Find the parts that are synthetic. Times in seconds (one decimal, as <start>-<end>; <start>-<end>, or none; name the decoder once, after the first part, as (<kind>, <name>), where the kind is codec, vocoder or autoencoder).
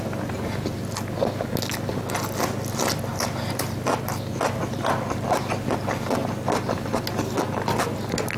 none